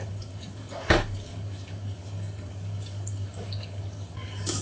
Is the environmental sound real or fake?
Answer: fake